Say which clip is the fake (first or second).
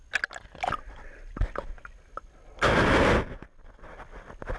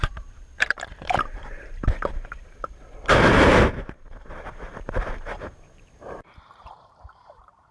second